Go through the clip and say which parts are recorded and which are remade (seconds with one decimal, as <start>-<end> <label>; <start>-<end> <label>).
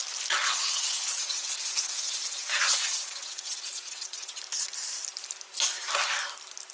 0.0-0.4 recorded; 0.4-4.4 remade; 4.4-6.7 recorded